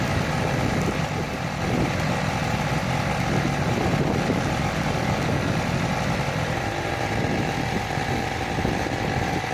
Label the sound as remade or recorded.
remade